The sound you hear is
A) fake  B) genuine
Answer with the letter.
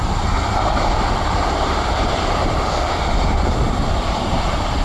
A